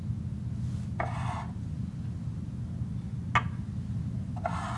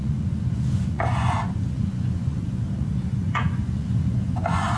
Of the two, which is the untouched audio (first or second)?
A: first